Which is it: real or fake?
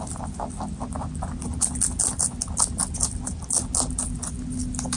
real